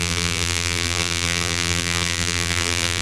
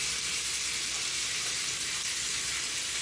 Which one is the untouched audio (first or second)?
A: second